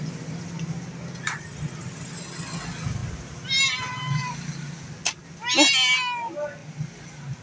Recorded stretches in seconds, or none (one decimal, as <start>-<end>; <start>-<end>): 0.0-7.4